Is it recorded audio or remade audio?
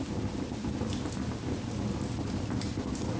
recorded